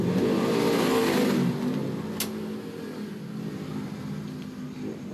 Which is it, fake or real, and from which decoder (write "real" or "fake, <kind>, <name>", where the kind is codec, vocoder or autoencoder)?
real